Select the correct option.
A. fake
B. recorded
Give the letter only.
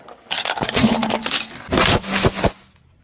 B